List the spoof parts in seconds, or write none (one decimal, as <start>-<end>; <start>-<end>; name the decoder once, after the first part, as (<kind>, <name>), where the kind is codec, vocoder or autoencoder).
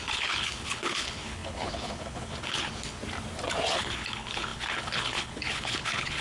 0.0-3.0 (codec, HILCodec); 3.7-6.2